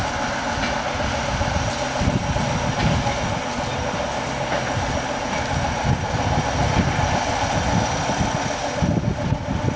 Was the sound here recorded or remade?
recorded